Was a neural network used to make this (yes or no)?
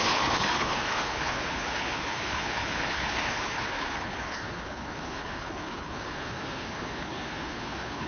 yes